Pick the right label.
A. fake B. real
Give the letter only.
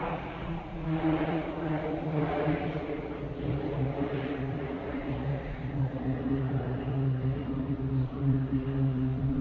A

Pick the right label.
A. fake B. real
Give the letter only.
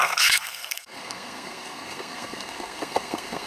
A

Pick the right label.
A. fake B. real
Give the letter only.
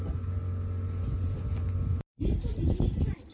B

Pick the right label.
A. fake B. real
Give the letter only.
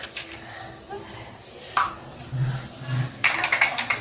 B